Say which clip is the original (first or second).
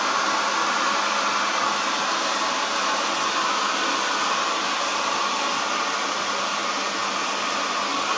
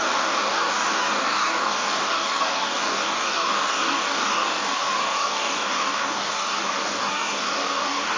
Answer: first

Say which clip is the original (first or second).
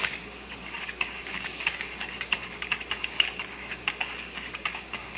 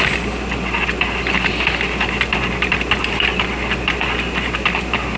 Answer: second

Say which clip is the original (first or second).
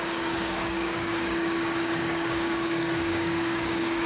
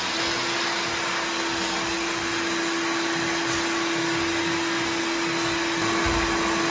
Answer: second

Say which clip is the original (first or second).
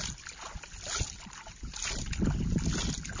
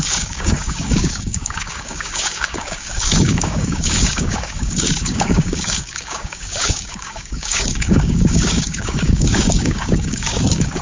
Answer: first